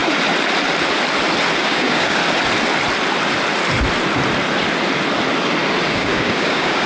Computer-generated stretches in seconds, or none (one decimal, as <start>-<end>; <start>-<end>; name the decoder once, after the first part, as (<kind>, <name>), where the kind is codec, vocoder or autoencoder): 1.6-2.2 (codec, DAC); 5.9-6.9